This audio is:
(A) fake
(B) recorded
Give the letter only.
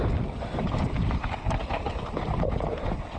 B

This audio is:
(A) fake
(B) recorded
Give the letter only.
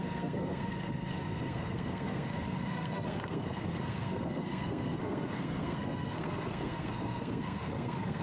A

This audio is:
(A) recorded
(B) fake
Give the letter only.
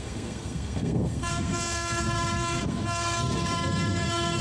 B